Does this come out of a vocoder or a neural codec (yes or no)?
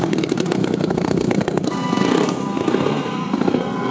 yes